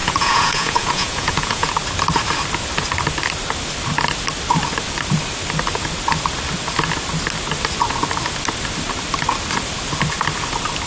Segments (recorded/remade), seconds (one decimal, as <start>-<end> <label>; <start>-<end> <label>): 0.0-1.7 remade; 1.7-10.9 recorded

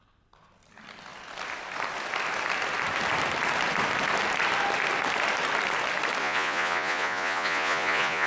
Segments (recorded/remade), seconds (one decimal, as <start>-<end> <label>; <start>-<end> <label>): 0.0-6.2 recorded; 6.2-8.3 remade

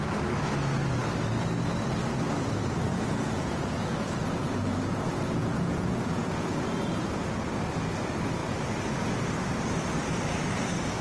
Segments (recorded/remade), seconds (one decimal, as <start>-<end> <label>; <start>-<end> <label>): 0.0-2.9 recorded; 2.9-7.1 remade; 7.1-11.0 recorded

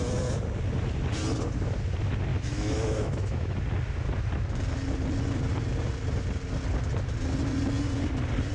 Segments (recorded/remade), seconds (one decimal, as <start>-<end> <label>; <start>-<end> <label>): 0.0-2.3 recorded; 2.3-3.6 remade; 3.6-8.5 recorded